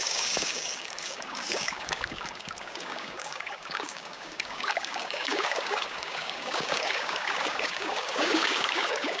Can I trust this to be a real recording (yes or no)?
no